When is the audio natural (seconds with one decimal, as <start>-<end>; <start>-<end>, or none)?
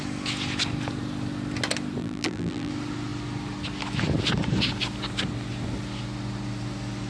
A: 0.0-2.0; 2.7-7.1